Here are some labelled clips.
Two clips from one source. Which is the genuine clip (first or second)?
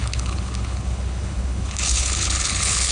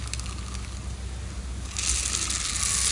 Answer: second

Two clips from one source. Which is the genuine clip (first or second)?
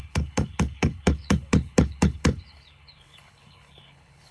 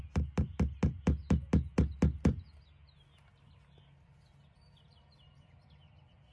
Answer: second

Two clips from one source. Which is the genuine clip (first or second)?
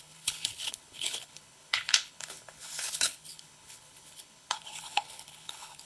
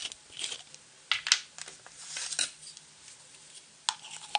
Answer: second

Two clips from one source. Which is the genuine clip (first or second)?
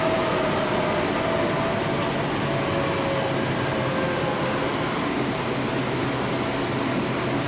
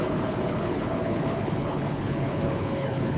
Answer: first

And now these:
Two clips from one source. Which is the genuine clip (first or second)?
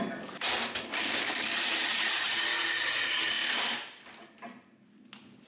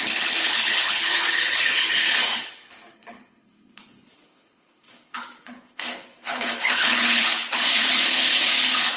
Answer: first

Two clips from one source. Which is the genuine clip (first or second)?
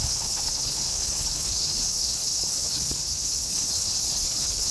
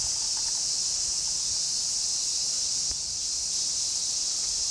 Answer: second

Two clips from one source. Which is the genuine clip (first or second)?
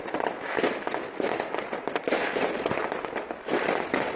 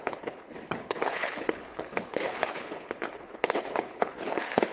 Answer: first